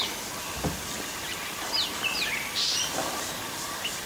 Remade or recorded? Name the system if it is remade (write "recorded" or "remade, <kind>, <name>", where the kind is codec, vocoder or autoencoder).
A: recorded